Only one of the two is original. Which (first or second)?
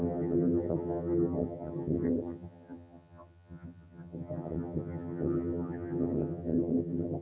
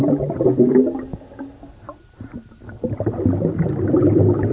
second